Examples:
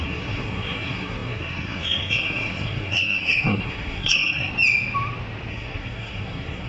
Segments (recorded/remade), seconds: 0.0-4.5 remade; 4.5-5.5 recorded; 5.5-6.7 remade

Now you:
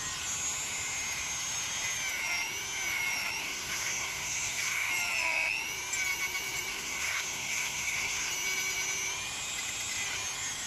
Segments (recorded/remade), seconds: 0.0-3.4 recorded; 3.4-4.9 remade; 4.9-6.7 recorded; 6.7-8.3 remade; 8.3-10.7 recorded

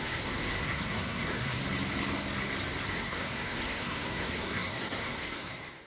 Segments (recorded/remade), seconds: 0.0-1.6 remade; 1.6-2.9 recorded; 2.9-5.9 remade

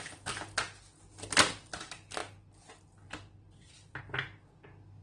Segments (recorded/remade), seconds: 0.0-5.0 recorded

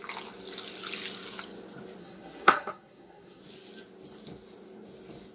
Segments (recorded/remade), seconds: 0.0-2.0 recorded; 2.0-3.4 remade; 3.4-5.3 recorded

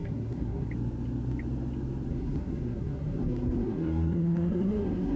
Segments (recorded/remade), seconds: 0.0-0.7 remade; 0.7-2.1 recorded; 2.1-5.2 remade

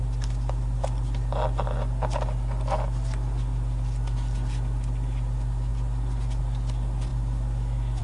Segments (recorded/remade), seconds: 0.0-8.0 recorded

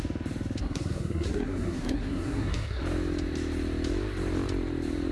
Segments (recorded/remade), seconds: 0.0-0.6 recorded; 0.6-2.8 remade; 2.8-5.1 recorded